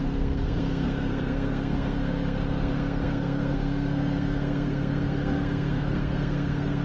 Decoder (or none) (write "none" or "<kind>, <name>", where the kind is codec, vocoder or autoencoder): codec, SNAC